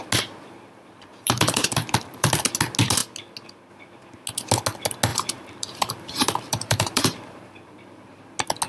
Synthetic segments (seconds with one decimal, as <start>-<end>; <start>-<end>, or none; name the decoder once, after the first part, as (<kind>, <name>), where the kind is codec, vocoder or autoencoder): 1.1-2.3 (vocoder, BigVGAN v2); 5.1-8.2